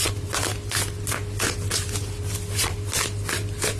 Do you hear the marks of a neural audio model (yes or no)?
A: no